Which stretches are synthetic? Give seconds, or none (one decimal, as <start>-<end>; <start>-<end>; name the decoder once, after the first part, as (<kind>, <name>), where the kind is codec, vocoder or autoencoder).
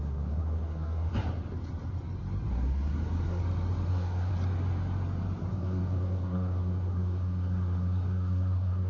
0.0-1.1 (codec, SNAC); 2.5-3.4; 3.9-4.3; 5.5-8.9